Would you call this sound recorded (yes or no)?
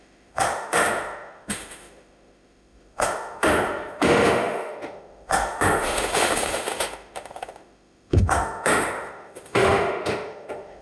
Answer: no